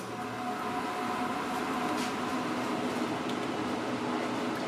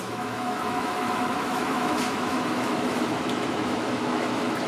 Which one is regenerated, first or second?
second